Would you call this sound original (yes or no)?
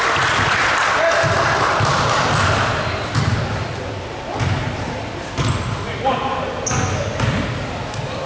yes